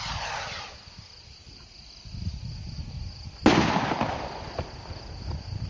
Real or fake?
real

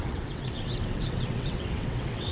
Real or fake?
fake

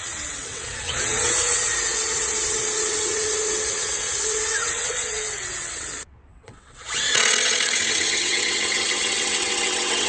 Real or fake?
fake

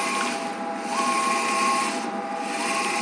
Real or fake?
real